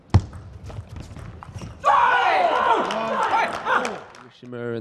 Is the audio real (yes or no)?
yes